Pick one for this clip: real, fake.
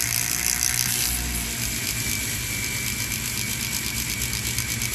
real